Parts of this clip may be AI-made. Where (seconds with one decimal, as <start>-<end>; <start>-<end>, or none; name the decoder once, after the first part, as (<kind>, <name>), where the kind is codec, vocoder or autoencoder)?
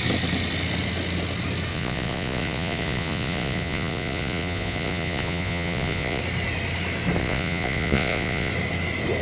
1.7-6.2 (vocoder, Vocos); 7.2-8.5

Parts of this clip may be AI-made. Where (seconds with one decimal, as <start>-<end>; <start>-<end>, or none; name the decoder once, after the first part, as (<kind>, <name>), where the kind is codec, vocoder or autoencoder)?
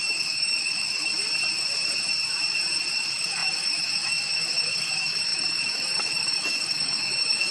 0.0-1.1 (autoencoder, DAC-VAE); 2.9-7.5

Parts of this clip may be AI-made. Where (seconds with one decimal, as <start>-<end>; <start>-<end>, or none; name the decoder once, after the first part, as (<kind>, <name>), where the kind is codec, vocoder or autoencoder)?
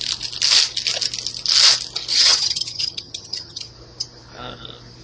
2.1-3.7 (vocoder, HiFi-GAN)